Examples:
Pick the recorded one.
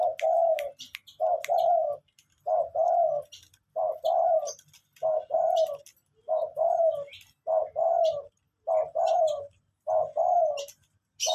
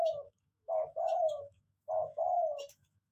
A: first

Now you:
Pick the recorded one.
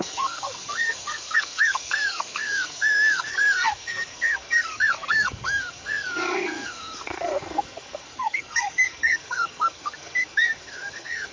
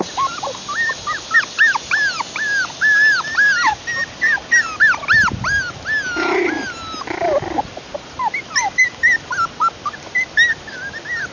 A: second